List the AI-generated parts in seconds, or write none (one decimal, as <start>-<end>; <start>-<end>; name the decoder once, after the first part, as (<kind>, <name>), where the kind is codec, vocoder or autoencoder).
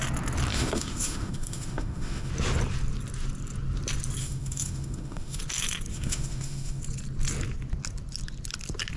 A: 0.5-2.3 (autoencoder, DAC-VAE); 4.2-5.4; 5.9-6.8